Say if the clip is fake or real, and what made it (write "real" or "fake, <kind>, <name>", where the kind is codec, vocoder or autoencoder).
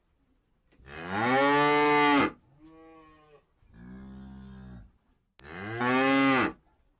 real